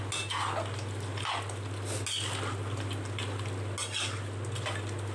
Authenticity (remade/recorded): recorded